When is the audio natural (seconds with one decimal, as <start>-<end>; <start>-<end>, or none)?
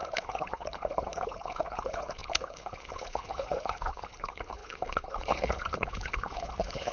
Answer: none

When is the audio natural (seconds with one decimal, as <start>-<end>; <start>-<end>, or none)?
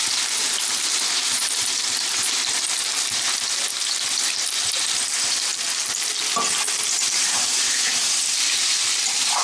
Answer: 5.5-6.9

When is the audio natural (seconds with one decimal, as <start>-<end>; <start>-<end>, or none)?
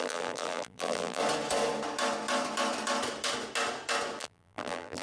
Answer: 1.2-4.2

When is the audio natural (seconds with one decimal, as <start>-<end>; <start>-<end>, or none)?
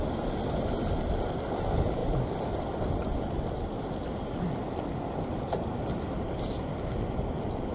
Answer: 0.0-7.7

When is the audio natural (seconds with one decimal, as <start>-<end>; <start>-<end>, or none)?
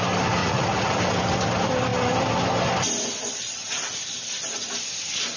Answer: 0.0-0.4; 1.0-5.4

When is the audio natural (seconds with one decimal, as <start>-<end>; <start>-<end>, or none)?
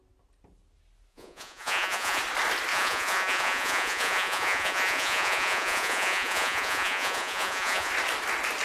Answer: 0.0-1.1; 2.2-2.7; 7.9-8.6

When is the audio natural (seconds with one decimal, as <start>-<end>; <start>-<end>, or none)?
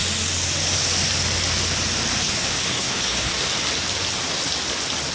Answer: 0.0-2.2; 3.3-5.1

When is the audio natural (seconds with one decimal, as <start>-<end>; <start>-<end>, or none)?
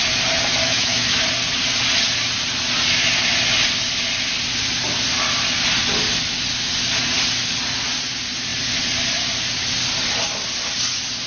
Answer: 0.0-0.6; 1.2-11.3